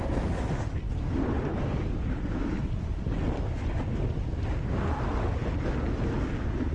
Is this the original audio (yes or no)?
yes